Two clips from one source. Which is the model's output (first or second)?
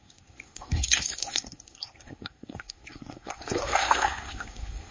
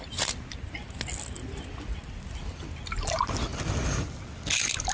first